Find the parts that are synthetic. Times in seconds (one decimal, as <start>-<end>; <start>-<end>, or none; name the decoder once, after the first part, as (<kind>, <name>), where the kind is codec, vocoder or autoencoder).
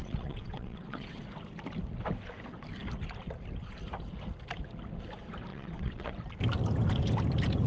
0.0-1.2 (vocoder, WaveNeXt); 5.5-6.1